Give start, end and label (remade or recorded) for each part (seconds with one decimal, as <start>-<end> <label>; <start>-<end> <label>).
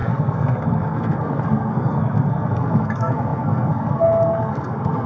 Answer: 0.0-5.1 remade